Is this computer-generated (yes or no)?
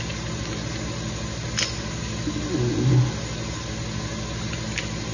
no